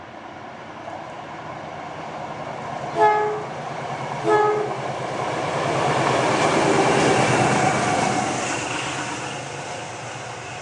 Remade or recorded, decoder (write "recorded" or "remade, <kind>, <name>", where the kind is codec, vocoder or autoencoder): recorded